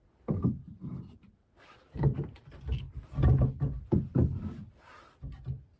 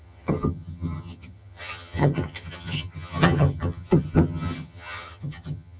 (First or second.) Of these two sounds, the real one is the first